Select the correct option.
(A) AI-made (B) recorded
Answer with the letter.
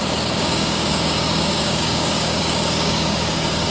A